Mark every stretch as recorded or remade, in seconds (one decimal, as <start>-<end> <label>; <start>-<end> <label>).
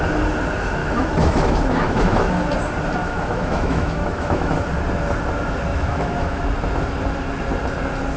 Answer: 0.0-0.8 recorded; 0.8-2.3 remade; 2.3-3.0 recorded; 3.0-4.5 remade; 4.5-5.7 recorded; 5.7-6.4 remade; 6.4-8.2 recorded